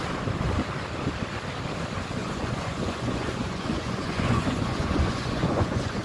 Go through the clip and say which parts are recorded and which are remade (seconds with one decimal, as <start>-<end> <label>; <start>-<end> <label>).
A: 0.0-2.2 recorded; 2.2-6.0 remade